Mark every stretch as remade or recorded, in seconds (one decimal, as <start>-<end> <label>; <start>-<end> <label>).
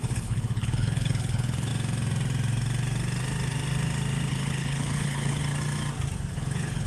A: 0.0-1.7 remade; 1.7-4.3 recorded; 4.3-5.4 remade; 5.4-6.3 recorded; 6.3-6.9 remade